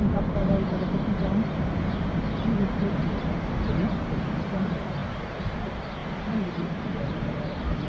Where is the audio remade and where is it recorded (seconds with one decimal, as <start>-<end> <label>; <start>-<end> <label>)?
0.0-3.0 remade; 3.0-3.8 recorded; 3.8-6.0 remade; 6.0-6.6 recorded; 6.6-7.9 remade